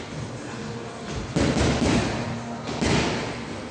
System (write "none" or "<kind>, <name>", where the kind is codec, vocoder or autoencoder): none